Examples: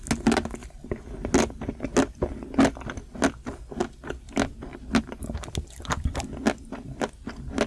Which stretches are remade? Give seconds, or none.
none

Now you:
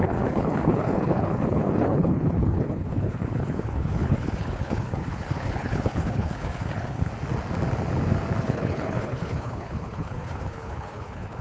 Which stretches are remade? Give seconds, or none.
0.0-7.1 (codec, HILCodec); 8.4-11.4

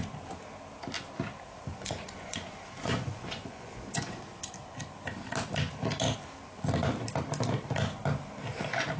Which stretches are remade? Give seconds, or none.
1.8-4.2 (vocoder, Vocos)

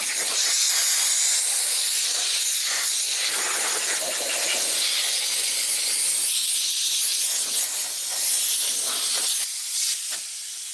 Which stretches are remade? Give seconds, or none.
0.8-3.4 (vocoder, Vocos); 5.0-5.7; 6.4-8.6

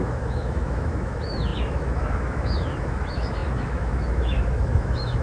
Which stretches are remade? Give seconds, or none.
0.0-5.2 (autoencoder, DAC-VAE)